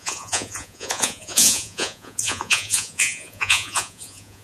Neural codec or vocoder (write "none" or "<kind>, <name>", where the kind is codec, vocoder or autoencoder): vocoder, Vocos